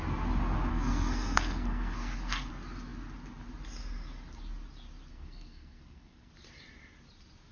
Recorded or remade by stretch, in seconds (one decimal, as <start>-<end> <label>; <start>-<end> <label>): 0.0-0.7 recorded; 0.7-2.5 remade; 2.5-5.1 recorded; 5.1-6.3 remade; 6.3-7.5 recorded